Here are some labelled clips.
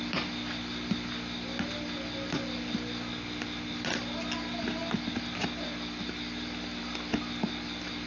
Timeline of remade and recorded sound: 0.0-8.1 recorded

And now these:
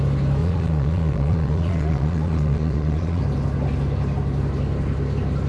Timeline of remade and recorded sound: 0.0-0.4 recorded; 0.4-3.2 remade; 3.2-5.5 recorded

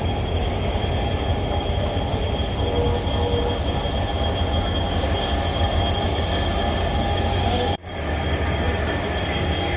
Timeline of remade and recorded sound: 0.0-0.8 remade; 0.8-4.8 recorded; 4.8-9.8 remade

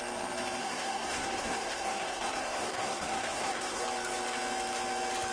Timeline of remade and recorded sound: 0.0-0.6 recorded; 0.6-3.8 remade; 3.8-5.3 recorded

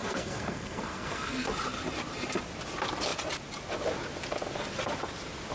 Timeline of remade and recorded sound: 0.0-1.5 remade; 1.5-5.5 recorded

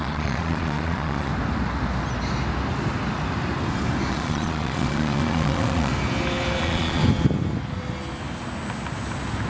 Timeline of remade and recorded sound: 0.0-1.3 remade; 1.3-4.1 recorded; 4.1-5.9 remade; 5.9-6.6 recorded; 6.6-7.0 remade; 7.0-9.5 recorded

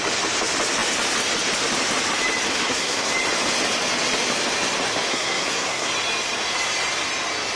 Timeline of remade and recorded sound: 0.0-2.5 recorded; 2.5-3.1 remade; 3.1-5.1 recorded; 5.1-5.9 remade; 5.9-7.6 recorded

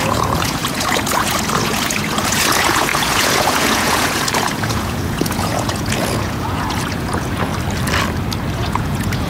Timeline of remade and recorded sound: 0.0-7.5 remade; 7.5-8.5 recorded; 8.5-9.3 remade